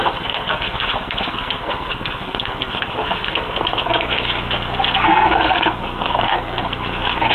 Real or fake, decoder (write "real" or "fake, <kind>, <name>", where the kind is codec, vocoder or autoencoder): fake, codec, SNAC